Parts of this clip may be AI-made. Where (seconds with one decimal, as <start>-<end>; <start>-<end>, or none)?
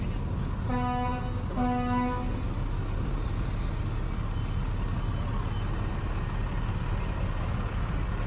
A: none